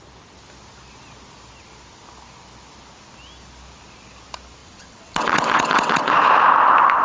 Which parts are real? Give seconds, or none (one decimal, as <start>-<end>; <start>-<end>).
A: 0.0-4.6; 6.1-7.0